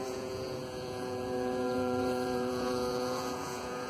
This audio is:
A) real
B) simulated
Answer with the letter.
B